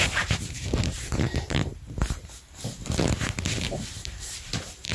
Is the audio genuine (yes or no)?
no